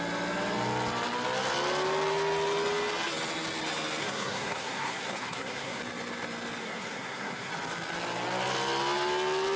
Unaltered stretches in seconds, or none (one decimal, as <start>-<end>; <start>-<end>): 0.0-4.0; 5.8-6.6; 7.5-9.6